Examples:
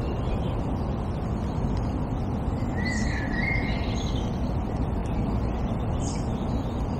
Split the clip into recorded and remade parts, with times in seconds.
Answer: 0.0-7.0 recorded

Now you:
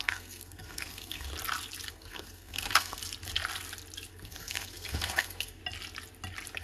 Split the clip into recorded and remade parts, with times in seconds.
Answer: 0.0-1.3 remade; 1.3-1.9 recorded; 1.9-3.0 remade; 3.0-4.1 recorded; 4.1-5.6 remade; 5.6-6.6 recorded